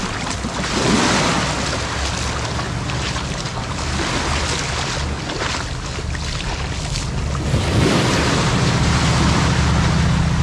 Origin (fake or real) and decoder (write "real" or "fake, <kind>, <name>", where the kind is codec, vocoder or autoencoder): real